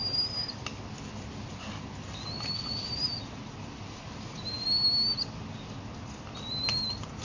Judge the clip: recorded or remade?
recorded